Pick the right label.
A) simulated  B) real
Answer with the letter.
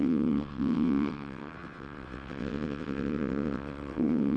A